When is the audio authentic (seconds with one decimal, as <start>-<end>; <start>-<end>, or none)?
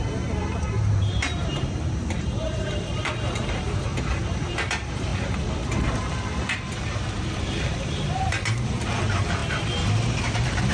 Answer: 3.9-4.5; 5.1-7.3; 9.4-10.2